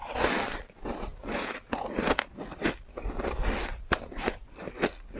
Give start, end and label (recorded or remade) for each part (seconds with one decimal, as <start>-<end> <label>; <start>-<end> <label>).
0.0-5.2 recorded